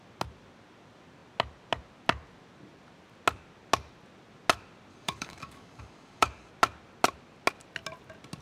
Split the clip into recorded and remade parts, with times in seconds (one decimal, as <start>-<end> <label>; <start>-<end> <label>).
0.0-4.9 recorded; 4.9-6.5 remade; 6.5-8.4 recorded